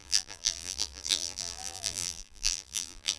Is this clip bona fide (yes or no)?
no